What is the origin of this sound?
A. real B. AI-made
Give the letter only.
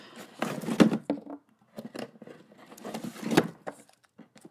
A